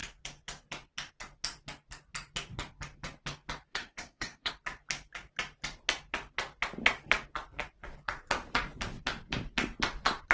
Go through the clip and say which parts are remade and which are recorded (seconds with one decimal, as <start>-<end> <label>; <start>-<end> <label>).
0.0-3.7 recorded; 3.7-4.5 remade; 4.5-10.3 recorded